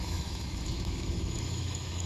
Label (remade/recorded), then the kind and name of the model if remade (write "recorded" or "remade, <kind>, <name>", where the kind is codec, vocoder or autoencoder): remade, autoencoder, DAC-VAE